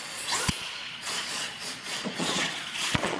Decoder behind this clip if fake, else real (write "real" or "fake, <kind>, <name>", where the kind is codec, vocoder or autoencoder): fake, vocoder, Vocos